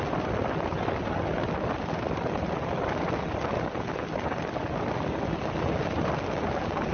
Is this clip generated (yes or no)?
no